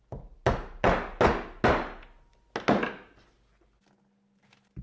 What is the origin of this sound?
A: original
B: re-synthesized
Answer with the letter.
A